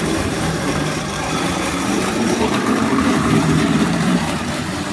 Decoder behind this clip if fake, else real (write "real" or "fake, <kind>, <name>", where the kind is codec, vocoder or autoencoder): fake, vocoder, BigVGAN v2